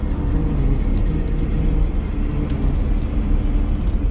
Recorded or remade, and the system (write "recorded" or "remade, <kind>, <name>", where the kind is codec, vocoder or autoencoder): recorded